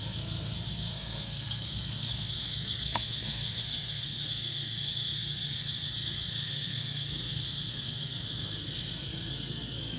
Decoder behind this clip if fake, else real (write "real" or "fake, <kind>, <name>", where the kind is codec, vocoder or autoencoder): fake, codec, SNAC